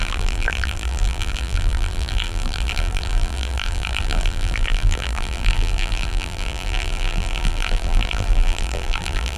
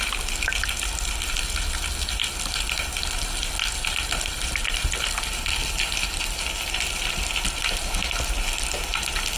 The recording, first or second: second